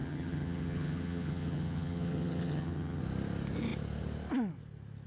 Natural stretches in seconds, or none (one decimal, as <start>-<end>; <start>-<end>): 3.0-5.1